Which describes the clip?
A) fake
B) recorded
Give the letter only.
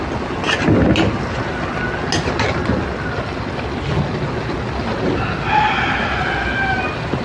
B